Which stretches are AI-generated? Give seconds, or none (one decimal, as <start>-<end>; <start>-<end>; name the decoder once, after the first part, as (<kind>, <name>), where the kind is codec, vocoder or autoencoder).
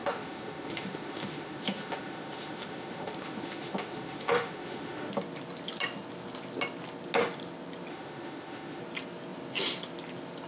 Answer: 0.0-5.1 (autoencoder, DAC-VAE); 7.9-8.8